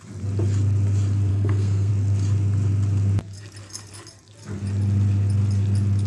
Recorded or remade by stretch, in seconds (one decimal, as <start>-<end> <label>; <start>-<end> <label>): 0.0-1.3 recorded; 1.3-1.9 remade; 1.9-6.1 recorded